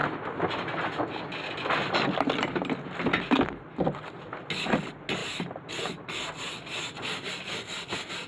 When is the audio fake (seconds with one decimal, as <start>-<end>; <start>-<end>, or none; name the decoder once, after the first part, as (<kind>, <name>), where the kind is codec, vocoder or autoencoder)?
5.2-5.7 (vocoder, BigVGAN v2)